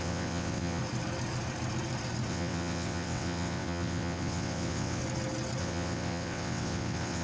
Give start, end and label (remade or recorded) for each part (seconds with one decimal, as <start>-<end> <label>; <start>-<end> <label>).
0.0-0.8 remade; 0.8-2.3 recorded; 2.3-5.0 remade; 5.0-5.6 recorded; 5.6-7.2 remade